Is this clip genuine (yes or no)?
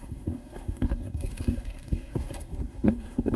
no